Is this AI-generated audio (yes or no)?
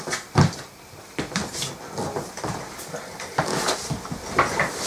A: yes